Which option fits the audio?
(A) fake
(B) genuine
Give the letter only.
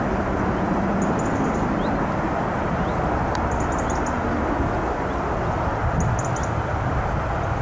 B